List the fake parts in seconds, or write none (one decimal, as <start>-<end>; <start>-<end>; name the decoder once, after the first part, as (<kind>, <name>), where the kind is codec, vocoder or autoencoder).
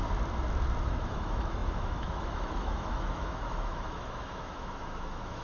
0.8-5.4 (autoencoder, DAC-VAE)